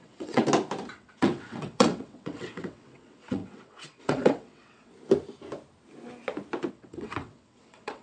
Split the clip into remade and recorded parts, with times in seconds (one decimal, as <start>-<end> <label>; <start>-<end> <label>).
0.0-0.4 remade; 0.4-0.9 recorded; 0.9-4.9 remade; 4.9-6.7 recorded; 6.7-8.0 remade